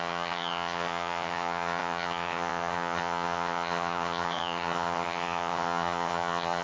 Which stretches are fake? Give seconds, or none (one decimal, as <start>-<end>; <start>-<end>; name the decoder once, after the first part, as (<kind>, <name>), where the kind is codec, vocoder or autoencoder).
0.0-6.6 (vocoder, HiFi-GAN)